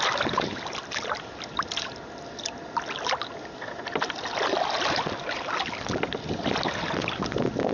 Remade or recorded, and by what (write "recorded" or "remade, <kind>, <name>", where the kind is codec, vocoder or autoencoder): recorded